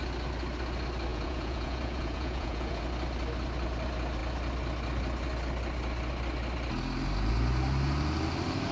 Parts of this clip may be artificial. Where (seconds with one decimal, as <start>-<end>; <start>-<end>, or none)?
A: 1.1-2.8

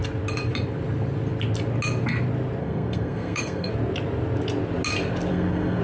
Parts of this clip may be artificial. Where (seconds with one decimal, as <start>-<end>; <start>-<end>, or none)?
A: 2.6-3.7; 5.3-5.8

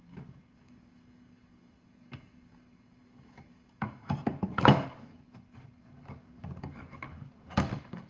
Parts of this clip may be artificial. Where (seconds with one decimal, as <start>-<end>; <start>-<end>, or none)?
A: 0.0-8.1

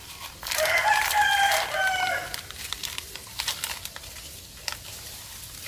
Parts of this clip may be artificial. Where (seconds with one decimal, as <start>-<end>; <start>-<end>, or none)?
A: 0.0-2.8; 5.1-5.7